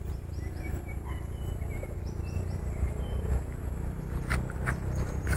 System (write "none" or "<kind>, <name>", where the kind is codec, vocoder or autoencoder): none